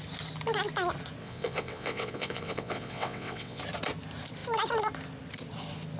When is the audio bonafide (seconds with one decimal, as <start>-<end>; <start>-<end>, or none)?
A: 0.0-1.2; 3.6-6.0